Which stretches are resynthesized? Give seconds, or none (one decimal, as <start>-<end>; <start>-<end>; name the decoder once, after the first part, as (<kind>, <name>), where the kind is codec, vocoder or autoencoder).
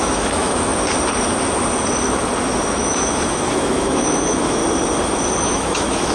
0.0-0.7 (autoencoder, DAC-VAE); 2.7-4.6; 5.4-6.1